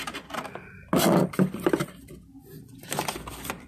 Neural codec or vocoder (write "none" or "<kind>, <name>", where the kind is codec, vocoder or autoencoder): none